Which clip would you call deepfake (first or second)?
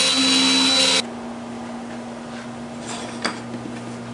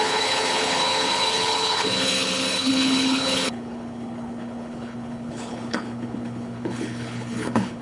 second